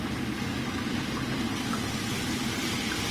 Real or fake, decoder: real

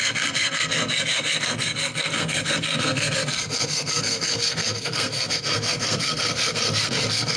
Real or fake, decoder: fake, codec, SNAC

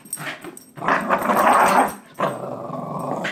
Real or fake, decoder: real